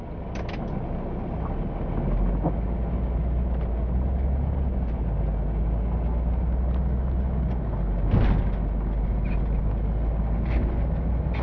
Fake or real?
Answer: real